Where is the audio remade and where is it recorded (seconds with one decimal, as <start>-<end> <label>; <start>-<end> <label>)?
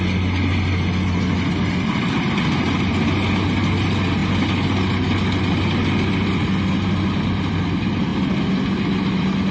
0.0-9.5 recorded